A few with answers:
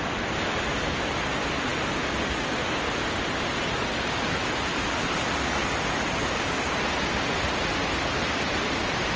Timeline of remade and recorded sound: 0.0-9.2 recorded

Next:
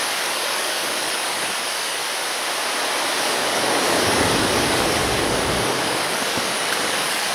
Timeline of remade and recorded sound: 0.0-2.0 remade; 2.0-3.2 recorded; 3.2-7.3 remade

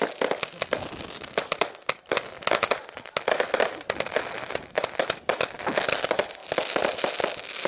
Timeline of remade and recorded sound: 0.0-7.7 recorded